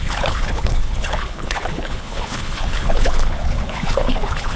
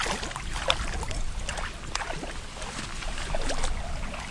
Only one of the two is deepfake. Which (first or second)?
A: first